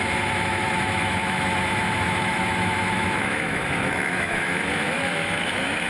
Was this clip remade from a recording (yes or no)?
yes